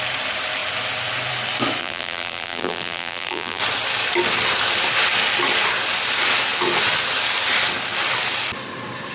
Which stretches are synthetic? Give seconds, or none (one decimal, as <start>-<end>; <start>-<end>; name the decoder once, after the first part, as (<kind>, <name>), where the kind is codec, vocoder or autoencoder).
1.8-3.6 (vocoder, BigVGAN v2)